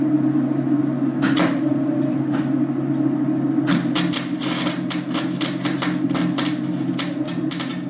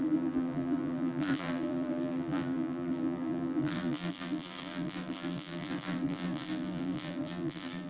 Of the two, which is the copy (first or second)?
second